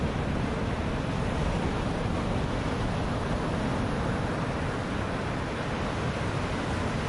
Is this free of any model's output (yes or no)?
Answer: yes